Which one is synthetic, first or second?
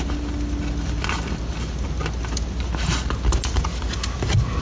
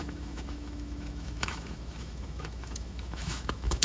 second